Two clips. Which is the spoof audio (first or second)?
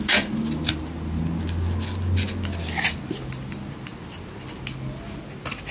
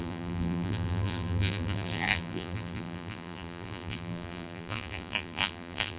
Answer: second